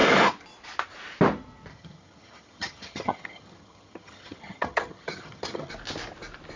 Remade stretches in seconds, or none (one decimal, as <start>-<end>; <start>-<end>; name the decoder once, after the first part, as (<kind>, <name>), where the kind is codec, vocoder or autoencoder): 1.7-5.7 (vocoder, HiFi-GAN)